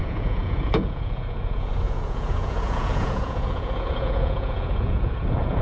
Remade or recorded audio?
remade